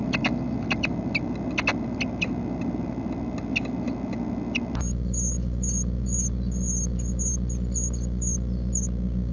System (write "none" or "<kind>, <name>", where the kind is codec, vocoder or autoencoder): none